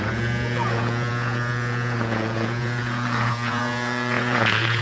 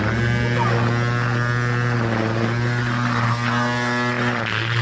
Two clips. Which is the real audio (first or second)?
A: second